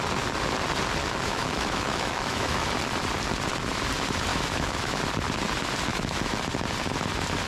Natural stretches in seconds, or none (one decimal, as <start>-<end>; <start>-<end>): 0.0-1.0; 2.7-4.3; 5.0-5.9; 6.4-7.5